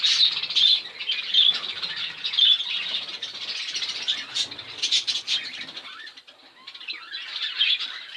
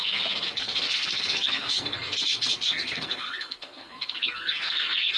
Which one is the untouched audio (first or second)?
first